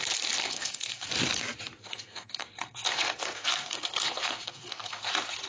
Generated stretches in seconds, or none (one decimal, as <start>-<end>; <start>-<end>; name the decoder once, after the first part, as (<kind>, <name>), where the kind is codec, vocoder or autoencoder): 0.4-1.1 (codec, SNAC); 1.8-5.1